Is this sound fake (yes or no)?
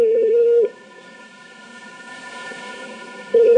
yes